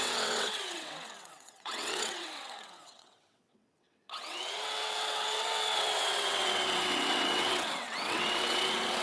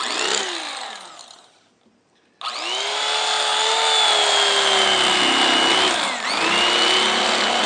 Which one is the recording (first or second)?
second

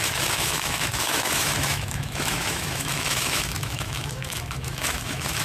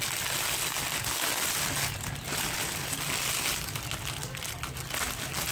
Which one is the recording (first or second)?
second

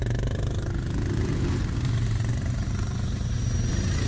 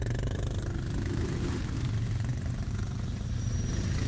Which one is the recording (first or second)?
first